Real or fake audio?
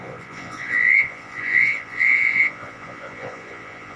fake